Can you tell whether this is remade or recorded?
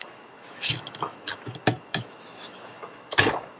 remade